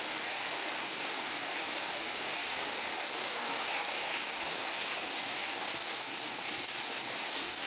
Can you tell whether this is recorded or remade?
remade